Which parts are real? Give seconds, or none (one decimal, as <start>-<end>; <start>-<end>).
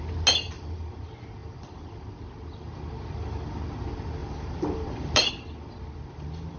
0.0-1.4; 2.0-4.2; 5.3-6.6